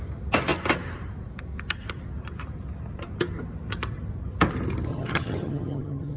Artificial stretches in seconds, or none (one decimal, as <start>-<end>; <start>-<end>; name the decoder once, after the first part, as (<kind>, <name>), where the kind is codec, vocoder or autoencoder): 4.9-6.2 (vocoder, HiFi-GAN)